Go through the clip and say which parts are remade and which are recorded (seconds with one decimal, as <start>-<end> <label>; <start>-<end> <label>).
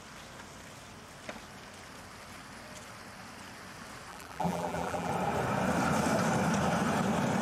0.0-4.1 recorded; 4.1-5.1 remade; 5.1-7.4 recorded